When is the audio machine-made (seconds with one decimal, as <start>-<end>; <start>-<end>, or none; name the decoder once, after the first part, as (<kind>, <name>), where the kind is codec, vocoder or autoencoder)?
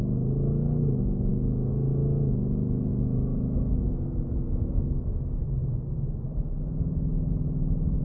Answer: 1.3-4.7 (autoencoder, DAC-VAE)